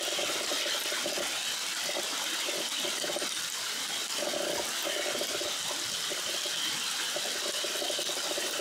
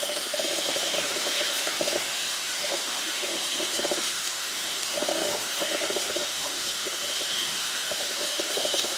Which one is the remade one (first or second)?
second